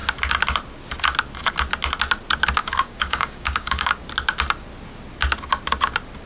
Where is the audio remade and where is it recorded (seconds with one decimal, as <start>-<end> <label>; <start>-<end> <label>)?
0.0-2.6 recorded; 2.6-4.0 remade; 4.0-6.3 recorded